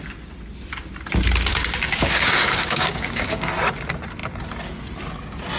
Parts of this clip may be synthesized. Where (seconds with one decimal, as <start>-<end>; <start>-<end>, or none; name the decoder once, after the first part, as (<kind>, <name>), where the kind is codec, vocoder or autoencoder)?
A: 1.5-3.5 (codec, DAC)